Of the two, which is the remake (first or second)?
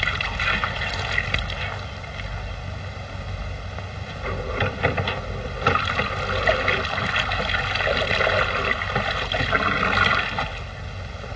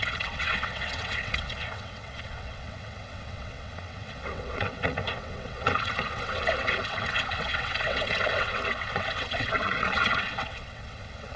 second